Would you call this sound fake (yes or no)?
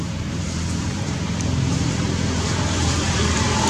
yes